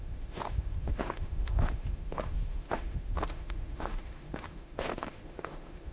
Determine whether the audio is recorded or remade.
remade